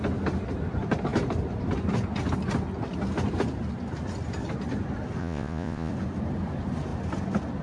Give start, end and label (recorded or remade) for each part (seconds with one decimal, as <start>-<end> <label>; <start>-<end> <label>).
0.0-5.2 recorded; 5.2-5.9 remade; 5.9-7.6 recorded